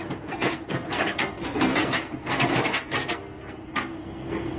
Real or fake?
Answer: fake